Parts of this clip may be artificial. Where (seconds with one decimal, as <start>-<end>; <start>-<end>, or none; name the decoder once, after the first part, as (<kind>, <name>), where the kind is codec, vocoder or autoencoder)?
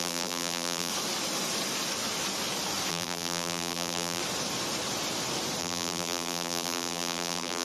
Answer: 0.0-0.9 (vocoder, BigVGAN v2); 2.9-4.2; 5.6-7.6